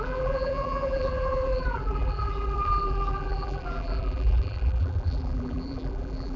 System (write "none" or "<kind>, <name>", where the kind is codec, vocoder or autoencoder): vocoder, BigVGAN v2